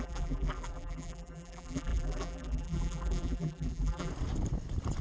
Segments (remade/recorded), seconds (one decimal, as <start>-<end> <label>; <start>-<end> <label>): 0.0-4.1 remade; 4.1-5.0 recorded